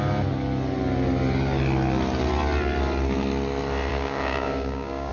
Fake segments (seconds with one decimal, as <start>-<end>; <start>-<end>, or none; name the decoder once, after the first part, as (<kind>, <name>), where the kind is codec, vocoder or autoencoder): 3.9-5.1 (codec, DAC)